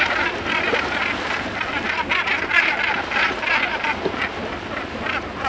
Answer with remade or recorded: recorded